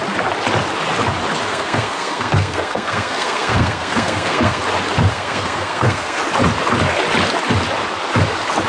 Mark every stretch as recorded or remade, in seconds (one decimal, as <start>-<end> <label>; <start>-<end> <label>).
0.0-1.5 recorded; 1.5-4.6 remade; 4.6-5.1 recorded; 5.1-6.2 remade; 6.2-8.7 recorded